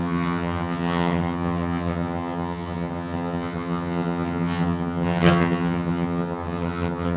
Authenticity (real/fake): fake